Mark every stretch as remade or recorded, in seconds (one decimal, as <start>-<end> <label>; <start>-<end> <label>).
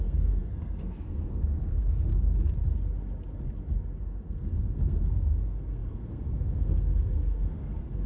0.0-2.1 remade; 2.1-4.0 recorded; 4.0-8.1 remade